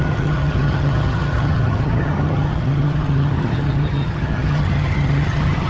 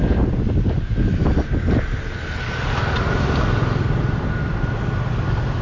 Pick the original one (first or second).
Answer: second